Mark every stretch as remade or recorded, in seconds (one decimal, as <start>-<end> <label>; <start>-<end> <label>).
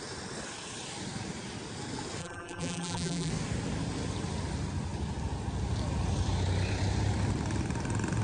0.0-2.2 recorded; 2.2-3.3 remade; 3.3-8.2 recorded